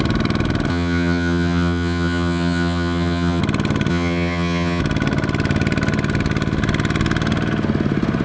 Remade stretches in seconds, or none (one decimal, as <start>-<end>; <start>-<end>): 0.7-3.4; 3.9-4.8